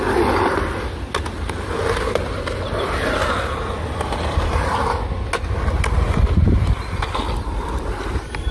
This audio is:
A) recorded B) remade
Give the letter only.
A